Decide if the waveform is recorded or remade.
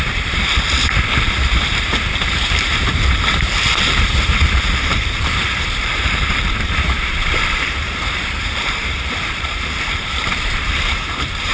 remade